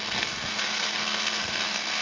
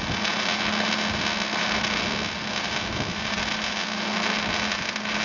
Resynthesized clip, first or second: first